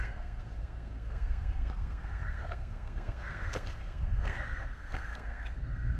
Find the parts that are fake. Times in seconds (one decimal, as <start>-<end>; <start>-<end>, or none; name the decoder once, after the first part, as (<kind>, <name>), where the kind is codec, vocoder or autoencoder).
0.0-6.0 (codec, SNAC)